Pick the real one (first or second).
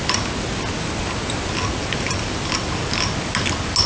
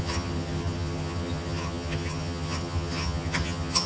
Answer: first